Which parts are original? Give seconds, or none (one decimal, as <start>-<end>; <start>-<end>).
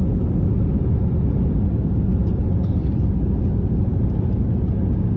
0.0-2.4; 3.1-5.2